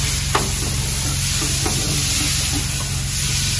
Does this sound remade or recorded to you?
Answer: recorded